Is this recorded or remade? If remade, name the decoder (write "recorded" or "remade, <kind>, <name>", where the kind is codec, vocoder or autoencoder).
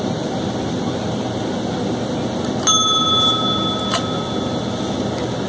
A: recorded